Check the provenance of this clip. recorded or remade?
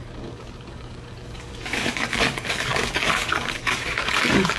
remade